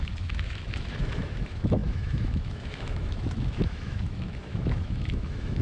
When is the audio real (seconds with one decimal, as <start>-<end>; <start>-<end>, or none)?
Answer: none